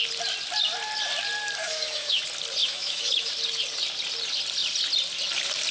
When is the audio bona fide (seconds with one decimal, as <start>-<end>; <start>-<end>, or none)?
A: 0.0-1.6; 2.2-2.6; 3.3-5.7